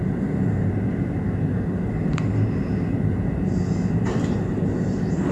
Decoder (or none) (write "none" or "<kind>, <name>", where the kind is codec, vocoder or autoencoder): vocoder, BigVGAN v2